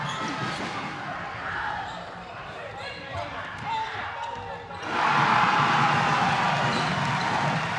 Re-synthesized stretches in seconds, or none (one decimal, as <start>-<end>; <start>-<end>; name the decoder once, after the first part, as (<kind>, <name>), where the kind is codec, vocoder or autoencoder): 0.6-4.1 (vocoder, BigVGAN v2)